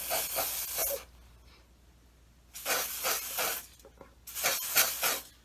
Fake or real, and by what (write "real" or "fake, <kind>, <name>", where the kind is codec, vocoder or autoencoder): real